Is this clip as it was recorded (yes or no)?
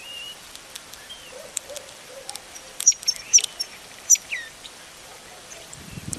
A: no